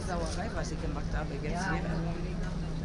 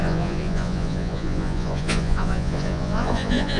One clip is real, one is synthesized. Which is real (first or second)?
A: first